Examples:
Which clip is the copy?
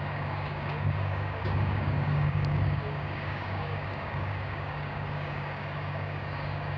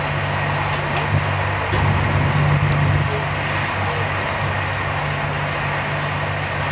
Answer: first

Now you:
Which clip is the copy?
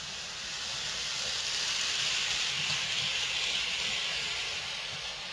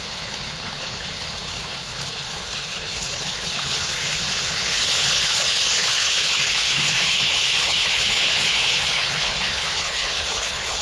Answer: second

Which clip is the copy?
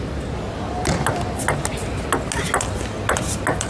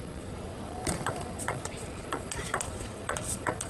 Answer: second